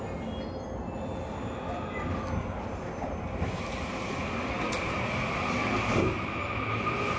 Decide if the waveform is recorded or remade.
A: recorded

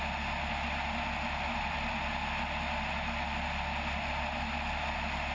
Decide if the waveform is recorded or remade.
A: recorded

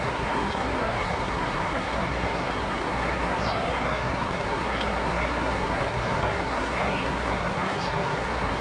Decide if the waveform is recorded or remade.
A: remade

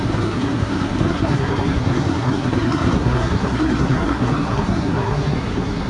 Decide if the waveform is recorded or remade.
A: remade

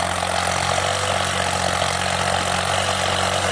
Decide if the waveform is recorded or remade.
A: recorded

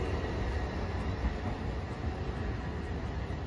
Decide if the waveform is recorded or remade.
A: recorded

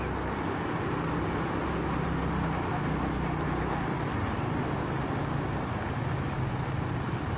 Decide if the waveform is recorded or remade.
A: recorded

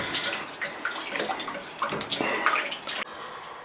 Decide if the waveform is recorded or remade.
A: recorded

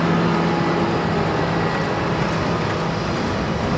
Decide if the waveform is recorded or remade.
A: recorded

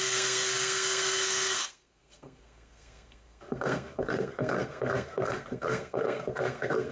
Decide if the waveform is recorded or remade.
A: remade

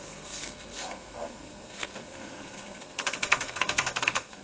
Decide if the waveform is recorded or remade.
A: remade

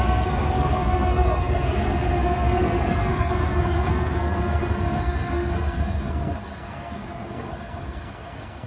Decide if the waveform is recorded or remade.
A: remade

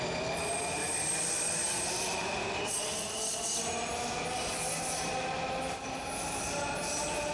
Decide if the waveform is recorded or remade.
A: recorded